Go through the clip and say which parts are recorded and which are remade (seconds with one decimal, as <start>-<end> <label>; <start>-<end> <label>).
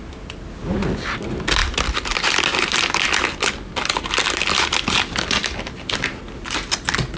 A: 0.0-7.2 recorded